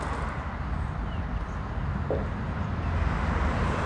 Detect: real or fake real